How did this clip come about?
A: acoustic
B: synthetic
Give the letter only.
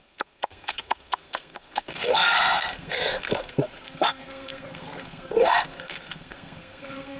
B